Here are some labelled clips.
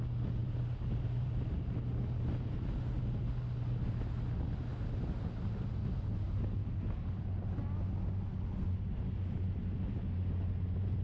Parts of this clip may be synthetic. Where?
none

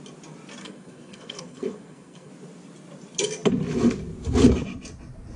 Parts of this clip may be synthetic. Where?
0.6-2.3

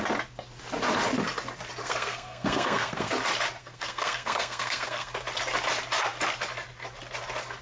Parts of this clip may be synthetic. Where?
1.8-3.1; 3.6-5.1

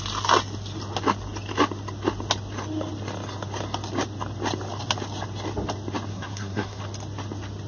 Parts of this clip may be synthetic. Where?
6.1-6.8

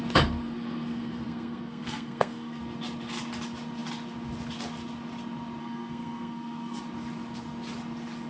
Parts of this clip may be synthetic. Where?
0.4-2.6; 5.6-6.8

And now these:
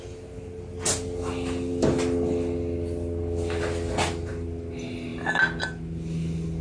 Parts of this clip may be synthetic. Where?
none

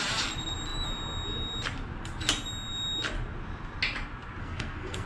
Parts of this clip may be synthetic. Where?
4.4-5.1

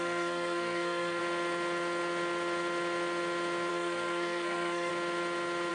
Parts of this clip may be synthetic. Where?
0.0-1.2; 3.7-4.9